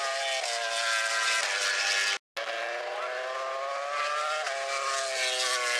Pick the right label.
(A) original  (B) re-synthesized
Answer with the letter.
A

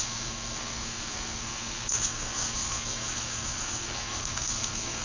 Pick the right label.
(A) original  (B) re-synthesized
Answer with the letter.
B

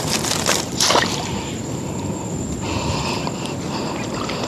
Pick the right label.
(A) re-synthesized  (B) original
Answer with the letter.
B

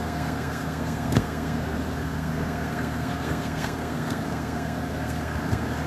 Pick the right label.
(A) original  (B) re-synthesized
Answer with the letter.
B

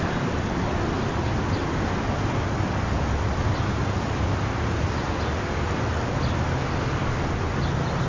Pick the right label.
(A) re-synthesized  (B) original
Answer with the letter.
B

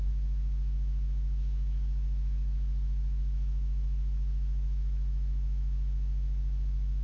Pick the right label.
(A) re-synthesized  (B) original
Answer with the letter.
A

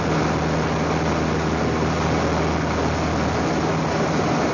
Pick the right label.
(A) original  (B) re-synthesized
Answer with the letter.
A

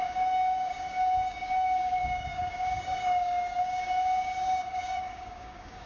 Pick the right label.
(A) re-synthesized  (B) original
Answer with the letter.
A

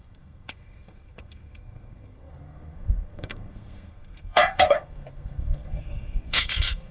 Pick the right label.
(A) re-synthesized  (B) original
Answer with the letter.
A